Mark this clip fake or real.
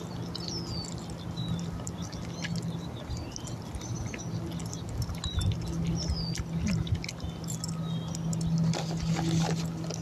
real